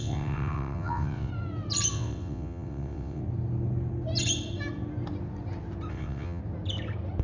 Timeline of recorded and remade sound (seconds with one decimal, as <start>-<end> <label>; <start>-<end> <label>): 0.0-1.3 remade; 1.3-1.9 recorded; 1.9-3.2 remade; 3.2-5.9 recorded; 5.9-6.4 remade; 6.4-7.2 recorded